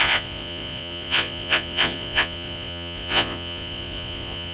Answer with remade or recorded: remade